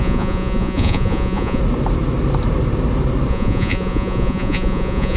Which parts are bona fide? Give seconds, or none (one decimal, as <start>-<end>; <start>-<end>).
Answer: 1.6-3.3